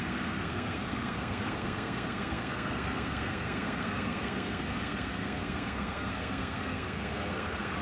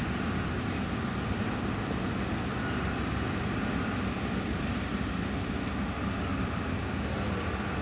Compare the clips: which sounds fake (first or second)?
first